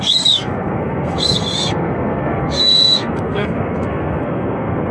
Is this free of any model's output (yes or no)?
no